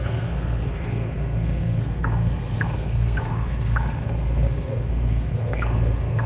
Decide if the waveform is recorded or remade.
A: remade